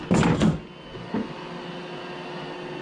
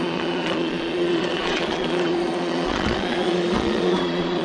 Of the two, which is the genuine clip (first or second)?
first